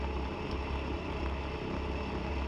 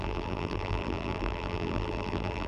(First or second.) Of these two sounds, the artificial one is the second